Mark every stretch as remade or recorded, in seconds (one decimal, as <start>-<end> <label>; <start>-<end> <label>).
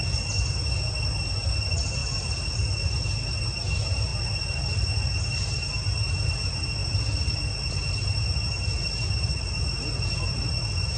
0.0-11.0 recorded